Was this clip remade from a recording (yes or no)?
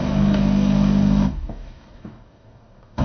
yes